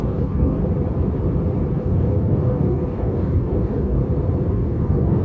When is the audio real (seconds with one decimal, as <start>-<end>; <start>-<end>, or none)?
0.6-1.8; 4.0-4.5